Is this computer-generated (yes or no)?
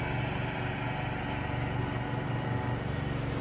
no